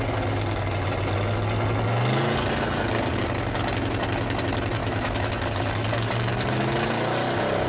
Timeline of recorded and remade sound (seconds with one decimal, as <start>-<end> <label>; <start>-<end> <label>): 0.0-4.8 recorded; 4.8-5.3 remade; 5.3-7.7 recorded